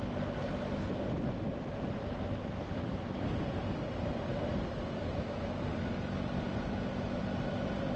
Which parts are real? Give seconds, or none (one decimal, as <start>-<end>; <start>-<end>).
0.0-8.0